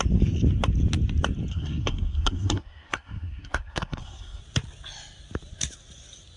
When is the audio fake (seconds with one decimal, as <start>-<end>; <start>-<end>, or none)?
1.5-4.4